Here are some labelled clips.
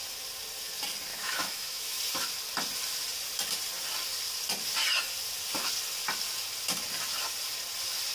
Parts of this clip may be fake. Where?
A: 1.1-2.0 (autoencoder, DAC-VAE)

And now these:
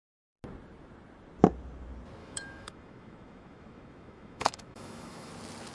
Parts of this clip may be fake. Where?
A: 2.2-5.3 (autoencoder, DAC-VAE)

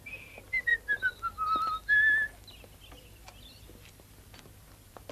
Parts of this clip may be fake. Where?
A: none

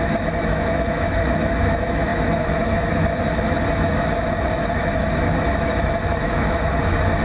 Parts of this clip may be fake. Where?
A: 0.0-7.2 (autoencoder, DAC-VAE)

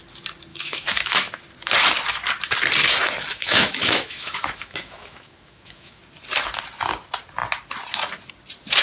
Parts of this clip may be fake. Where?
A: 0.5-1.4 (autoencoder, DAC-VAE); 3.3-6.0

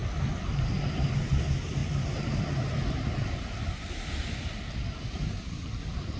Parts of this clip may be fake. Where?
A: none